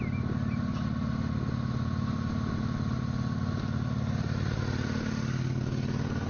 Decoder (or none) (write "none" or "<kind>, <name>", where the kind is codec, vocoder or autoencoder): none